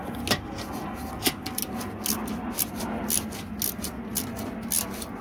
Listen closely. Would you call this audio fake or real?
real